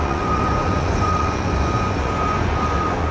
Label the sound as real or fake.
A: fake